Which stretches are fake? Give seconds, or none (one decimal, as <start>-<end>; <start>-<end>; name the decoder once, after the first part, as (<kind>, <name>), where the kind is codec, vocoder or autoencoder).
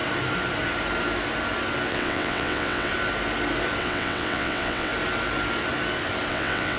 1.9-2.9 (vocoder, WaveNeXt); 3.8-4.9; 6.3-6.8